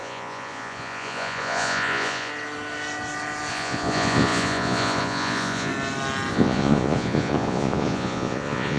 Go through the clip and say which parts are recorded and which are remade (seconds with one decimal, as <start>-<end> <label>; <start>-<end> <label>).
0.0-2.3 remade; 2.3-3.5 recorded; 3.5-5.7 remade; 5.7-6.3 recorded; 6.3-8.8 remade